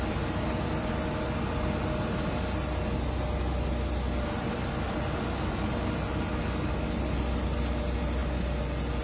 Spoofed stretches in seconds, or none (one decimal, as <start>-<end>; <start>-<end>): none